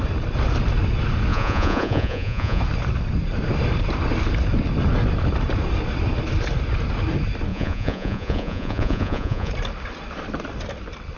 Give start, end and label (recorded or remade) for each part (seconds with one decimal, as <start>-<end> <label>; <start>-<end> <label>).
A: 0.0-1.3 recorded; 1.3-2.6 remade; 2.6-7.5 recorded; 7.5-9.5 remade; 9.5-11.2 recorded